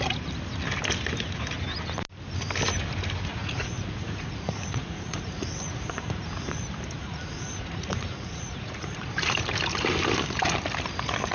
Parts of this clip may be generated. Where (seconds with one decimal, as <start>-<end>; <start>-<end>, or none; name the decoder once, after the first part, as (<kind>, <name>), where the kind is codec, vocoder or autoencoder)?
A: 3.3-6.6 (vocoder, Vocos); 7.0-9.1